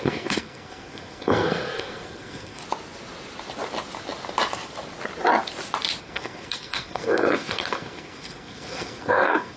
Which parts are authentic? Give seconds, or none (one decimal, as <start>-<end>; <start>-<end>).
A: 2.6-6.0